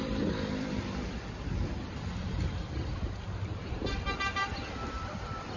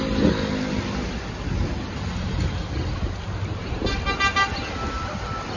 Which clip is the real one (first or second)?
second